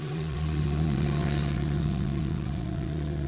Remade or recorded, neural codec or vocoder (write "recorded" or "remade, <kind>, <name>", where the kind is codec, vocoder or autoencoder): remade, vocoder, WaveNeXt